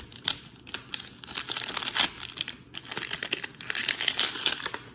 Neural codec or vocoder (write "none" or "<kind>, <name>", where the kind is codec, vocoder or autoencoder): none